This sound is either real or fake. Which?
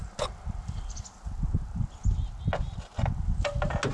real